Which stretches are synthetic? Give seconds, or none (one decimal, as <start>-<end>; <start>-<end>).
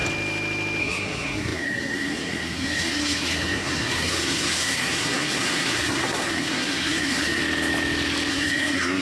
0.8-7.4; 8.3-9.0